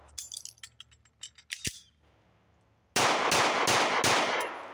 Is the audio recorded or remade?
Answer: recorded